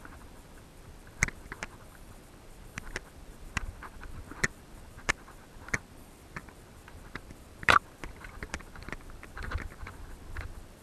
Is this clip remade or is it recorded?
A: remade